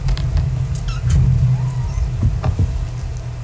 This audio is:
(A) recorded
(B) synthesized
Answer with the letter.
A